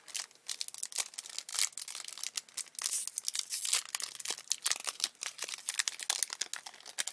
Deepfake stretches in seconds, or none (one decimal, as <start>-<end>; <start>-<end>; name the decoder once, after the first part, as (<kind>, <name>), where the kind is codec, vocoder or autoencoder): 4.8-5.4 (vocoder, BigVGAN v2)